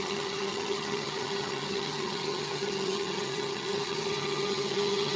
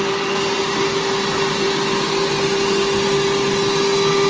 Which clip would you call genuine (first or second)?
second